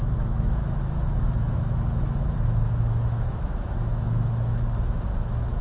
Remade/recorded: remade